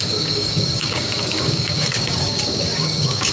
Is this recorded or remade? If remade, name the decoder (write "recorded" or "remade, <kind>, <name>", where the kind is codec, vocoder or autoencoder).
remade, codec, DAC